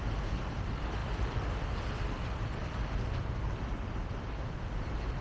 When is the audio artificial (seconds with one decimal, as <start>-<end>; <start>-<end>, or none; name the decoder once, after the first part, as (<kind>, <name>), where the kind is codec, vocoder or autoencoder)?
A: none